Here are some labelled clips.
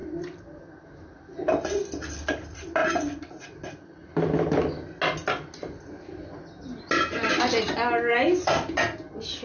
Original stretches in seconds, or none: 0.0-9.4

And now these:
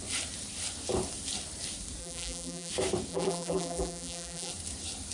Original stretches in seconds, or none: 0.0-2.0; 2.7-3.1; 4.5-5.1